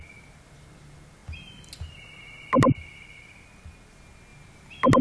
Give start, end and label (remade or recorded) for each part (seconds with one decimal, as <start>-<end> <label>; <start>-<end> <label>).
0.0-5.0 recorded